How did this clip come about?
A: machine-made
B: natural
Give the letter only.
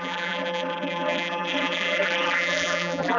A